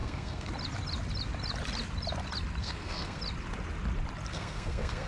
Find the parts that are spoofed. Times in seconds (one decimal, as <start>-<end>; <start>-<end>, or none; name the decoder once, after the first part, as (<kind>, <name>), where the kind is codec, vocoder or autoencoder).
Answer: 0.0-0.5 (codec, SNAC); 2.6-3.2; 4.3-5.1